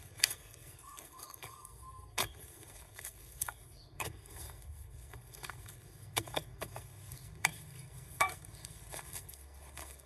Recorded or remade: remade